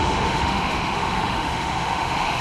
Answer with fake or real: fake